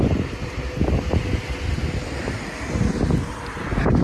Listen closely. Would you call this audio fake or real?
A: real